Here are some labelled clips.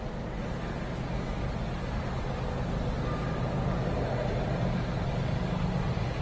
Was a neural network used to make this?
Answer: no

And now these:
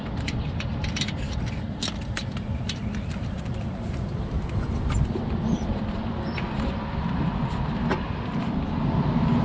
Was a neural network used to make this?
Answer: yes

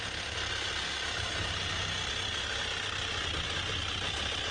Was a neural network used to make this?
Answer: no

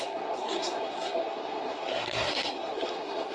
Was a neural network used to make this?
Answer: yes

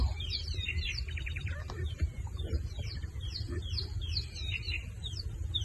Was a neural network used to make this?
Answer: yes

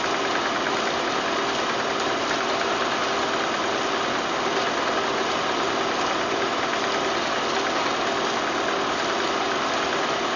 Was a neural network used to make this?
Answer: no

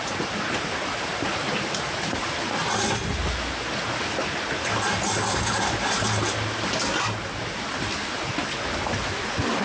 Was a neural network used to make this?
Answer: no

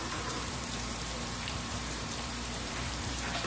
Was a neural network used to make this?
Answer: yes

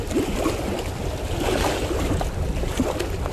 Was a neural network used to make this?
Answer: no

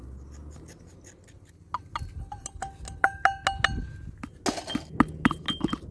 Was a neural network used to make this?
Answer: no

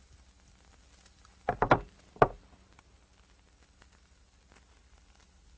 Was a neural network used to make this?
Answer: no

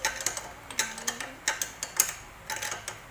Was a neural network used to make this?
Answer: no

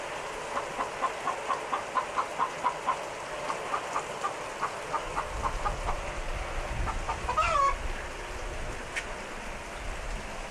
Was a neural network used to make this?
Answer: no